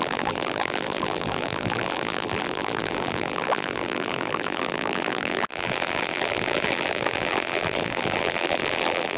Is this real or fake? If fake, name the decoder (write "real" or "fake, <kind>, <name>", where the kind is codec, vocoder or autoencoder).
fake, vocoder, BigVGAN v2